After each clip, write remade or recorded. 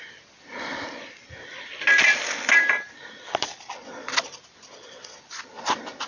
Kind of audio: recorded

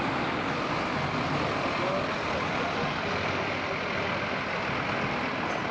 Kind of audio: recorded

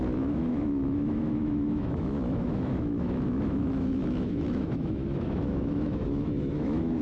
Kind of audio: remade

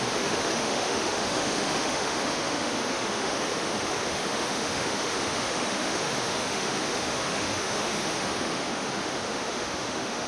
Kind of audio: remade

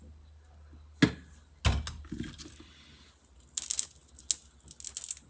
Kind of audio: recorded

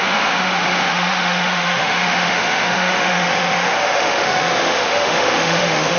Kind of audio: remade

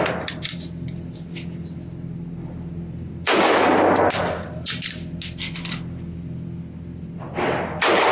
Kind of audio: recorded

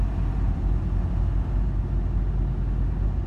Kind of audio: recorded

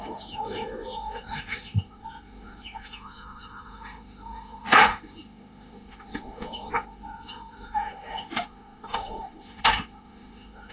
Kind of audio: remade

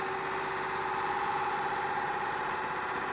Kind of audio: recorded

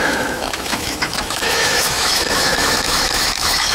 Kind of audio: remade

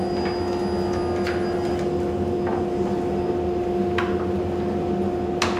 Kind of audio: recorded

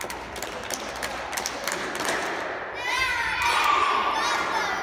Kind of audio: recorded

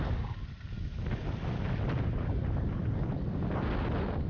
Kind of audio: recorded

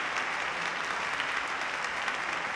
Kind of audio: recorded